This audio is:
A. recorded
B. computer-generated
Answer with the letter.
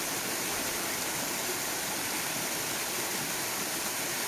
B